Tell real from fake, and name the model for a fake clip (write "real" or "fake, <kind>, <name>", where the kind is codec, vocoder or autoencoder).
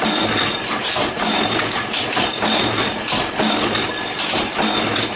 real